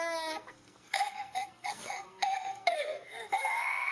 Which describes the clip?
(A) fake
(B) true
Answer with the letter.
A